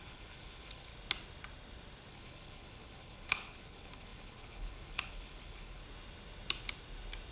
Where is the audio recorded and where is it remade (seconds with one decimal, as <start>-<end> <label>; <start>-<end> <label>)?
0.0-0.9 remade; 0.9-2.1 recorded; 2.1-5.8 remade; 5.8-7.3 recorded